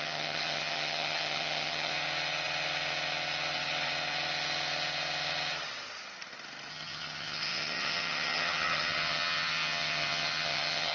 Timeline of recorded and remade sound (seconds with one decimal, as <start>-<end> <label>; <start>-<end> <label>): 0.0-1.9 remade; 1.9-6.7 recorded; 6.7-10.9 remade